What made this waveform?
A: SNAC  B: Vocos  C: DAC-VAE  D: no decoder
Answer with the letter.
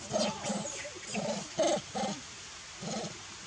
D